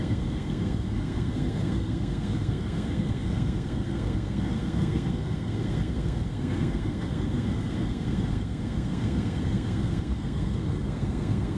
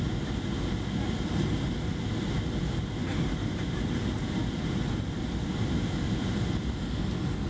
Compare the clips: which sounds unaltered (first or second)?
second